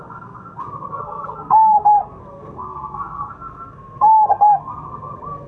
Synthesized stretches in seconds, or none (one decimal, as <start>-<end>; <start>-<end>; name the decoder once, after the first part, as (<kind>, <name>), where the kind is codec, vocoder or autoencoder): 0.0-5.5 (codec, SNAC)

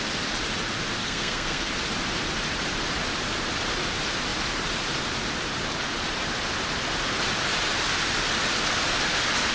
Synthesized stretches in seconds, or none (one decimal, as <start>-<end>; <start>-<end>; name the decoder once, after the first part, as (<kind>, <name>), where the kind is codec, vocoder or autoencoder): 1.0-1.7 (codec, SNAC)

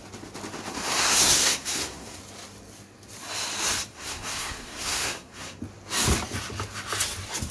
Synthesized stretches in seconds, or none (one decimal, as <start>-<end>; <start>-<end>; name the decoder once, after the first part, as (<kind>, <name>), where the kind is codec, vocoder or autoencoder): 0.7-2.2 (codec, SNAC); 3.9-5.6

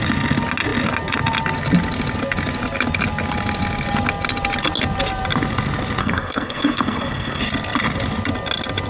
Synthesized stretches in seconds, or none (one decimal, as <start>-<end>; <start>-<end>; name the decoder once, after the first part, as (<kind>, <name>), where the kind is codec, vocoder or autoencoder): 6.0-7.4 (codec, SNAC)